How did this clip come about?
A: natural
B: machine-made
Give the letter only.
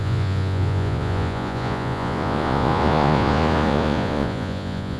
B